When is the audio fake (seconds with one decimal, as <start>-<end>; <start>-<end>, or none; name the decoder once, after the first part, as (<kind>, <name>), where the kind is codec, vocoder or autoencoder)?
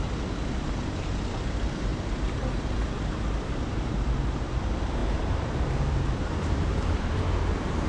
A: 1.9-4.6 (vocoder, BigVGAN v2); 5.0-7.2